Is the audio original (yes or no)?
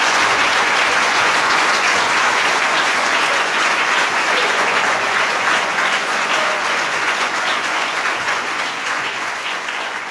no